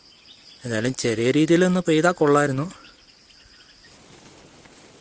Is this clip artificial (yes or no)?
no